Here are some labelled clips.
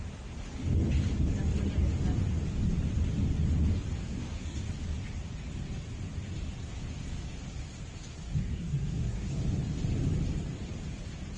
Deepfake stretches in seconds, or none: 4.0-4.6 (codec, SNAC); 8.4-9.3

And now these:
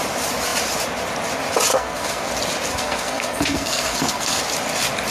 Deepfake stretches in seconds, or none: 1.7-2.3 (codec, SNAC); 2.7-4.4

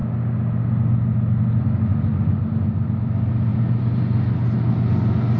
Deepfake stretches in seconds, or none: none

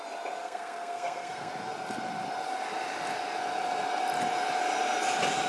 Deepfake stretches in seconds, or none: 0.4-1.5 (codec, SNAC)